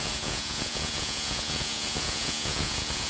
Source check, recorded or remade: remade